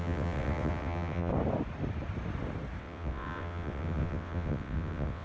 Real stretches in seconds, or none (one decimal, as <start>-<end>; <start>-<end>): 1.3-2.8